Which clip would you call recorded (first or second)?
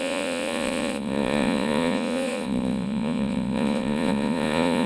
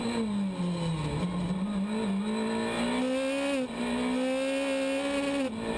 second